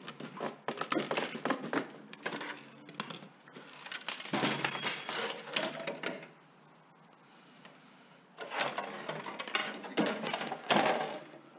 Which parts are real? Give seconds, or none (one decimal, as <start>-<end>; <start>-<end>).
0.0-9.6; 10.7-11.6